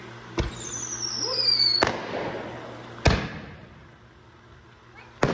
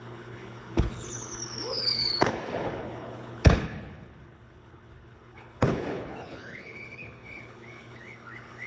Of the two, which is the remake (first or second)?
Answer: second